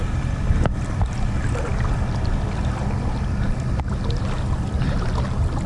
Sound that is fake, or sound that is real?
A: real